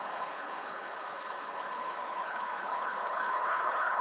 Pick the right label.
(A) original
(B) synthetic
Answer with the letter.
B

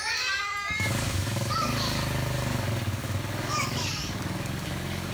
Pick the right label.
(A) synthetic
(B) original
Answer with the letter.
A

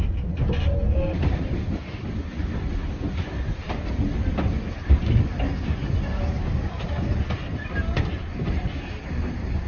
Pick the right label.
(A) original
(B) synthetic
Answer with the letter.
A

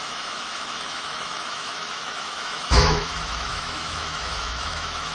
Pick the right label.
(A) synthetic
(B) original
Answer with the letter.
A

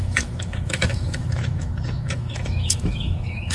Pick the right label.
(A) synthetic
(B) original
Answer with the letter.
A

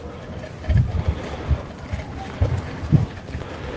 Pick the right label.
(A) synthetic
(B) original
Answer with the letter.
B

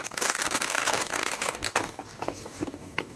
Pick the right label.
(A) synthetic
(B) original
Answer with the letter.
A